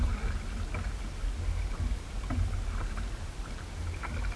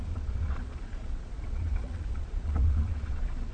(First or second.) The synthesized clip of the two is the second